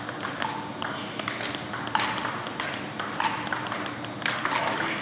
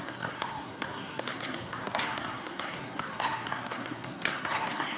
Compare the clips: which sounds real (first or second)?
first